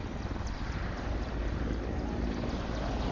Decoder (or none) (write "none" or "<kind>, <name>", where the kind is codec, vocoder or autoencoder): none